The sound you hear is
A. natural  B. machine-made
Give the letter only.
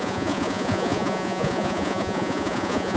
B